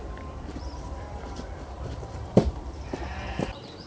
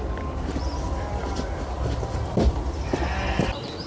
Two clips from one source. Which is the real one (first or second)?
second